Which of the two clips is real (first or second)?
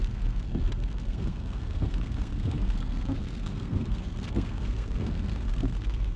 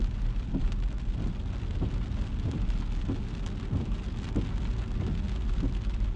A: second